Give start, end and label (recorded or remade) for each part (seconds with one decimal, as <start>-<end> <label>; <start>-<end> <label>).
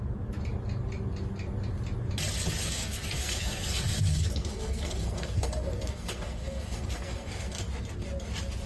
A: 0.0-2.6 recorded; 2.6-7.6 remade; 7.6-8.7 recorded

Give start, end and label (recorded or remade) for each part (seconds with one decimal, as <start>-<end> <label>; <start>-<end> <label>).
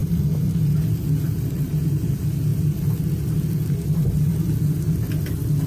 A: 0.0-5.7 recorded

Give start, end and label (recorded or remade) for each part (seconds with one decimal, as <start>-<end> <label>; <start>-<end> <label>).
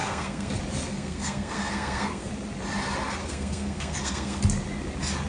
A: 0.0-0.5 remade; 0.5-0.9 recorded; 0.9-2.3 remade; 2.3-3.2 recorded; 3.2-4.4 remade; 4.4-5.3 recorded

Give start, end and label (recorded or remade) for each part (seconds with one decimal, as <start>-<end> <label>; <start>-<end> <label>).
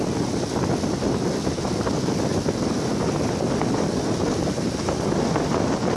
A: 0.0-6.0 recorded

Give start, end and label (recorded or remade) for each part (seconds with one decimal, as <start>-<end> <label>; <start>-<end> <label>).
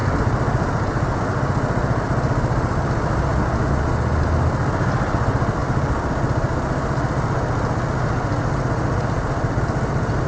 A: 0.0-10.3 recorded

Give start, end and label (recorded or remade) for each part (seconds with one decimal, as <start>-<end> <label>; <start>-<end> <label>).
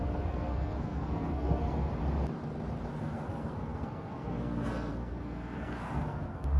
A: 0.0-1.9 remade; 1.9-3.0 recorded; 3.0-6.6 remade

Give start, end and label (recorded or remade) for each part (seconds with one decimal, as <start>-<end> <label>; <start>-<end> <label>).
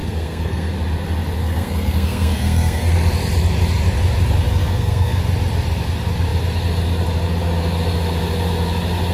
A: 0.0-0.7 remade; 0.7-1.4 recorded; 1.4-2.9 remade; 2.9-4.6 recorded; 4.6-5.2 remade; 5.2-9.1 recorded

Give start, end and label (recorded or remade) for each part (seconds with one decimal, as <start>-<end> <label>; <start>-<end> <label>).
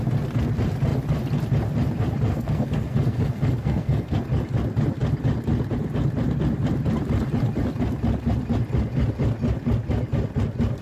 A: 0.0-2.3 recorded; 2.3-4.2 remade; 4.2-10.8 recorded